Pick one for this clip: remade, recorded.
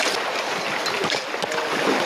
recorded